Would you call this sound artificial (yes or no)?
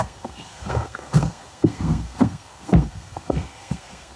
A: yes